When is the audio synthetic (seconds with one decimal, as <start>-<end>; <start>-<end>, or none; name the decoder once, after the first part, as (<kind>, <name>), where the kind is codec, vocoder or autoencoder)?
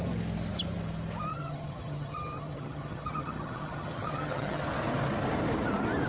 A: 1.3-4.6 (vocoder, HiFi-GAN)